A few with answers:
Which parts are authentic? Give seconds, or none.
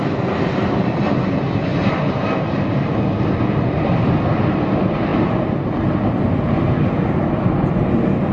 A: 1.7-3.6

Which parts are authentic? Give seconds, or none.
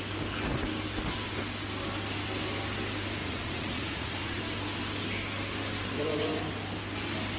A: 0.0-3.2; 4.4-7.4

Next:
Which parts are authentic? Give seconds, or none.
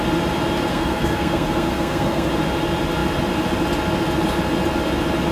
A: 0.0-0.7; 2.3-5.3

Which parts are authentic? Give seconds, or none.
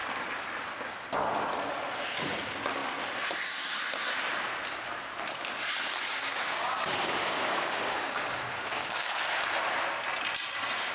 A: 0.0-6.1; 9.1-10.9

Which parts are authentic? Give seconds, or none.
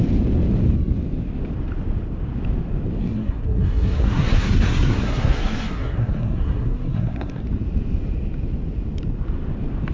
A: 0.0-3.0; 7.4-9.9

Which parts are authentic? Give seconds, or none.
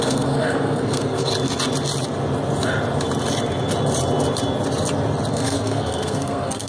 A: 1.3-5.3